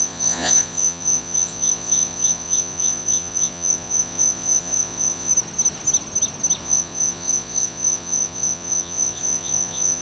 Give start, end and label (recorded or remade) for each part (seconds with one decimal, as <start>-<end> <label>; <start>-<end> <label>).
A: 0.0-5.3 remade; 5.3-6.6 recorded; 6.6-10.0 remade